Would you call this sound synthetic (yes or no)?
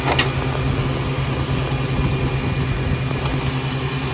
no